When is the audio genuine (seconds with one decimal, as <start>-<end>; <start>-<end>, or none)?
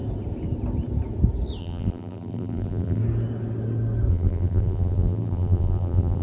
0.0-1.6; 3.0-4.1